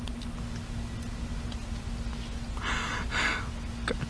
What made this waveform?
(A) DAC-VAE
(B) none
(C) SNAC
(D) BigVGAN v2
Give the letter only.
B